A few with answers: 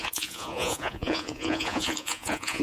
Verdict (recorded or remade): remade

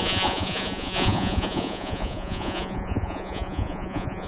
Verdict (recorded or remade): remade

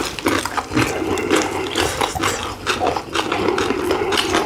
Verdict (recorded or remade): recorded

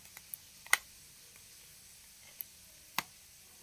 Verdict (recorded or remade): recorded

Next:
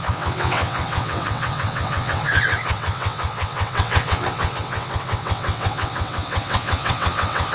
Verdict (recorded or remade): remade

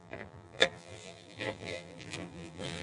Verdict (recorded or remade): remade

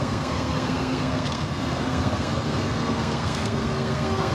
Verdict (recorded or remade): remade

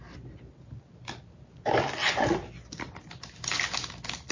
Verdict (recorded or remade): recorded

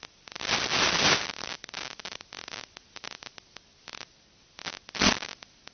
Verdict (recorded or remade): recorded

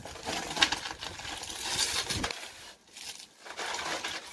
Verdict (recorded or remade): recorded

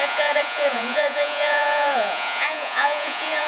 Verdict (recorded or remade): remade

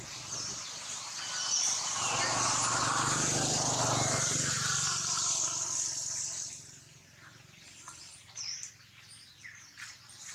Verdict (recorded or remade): recorded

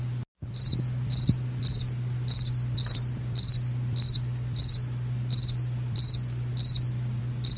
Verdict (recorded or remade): recorded